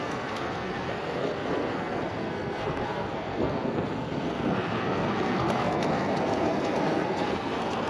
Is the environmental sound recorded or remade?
remade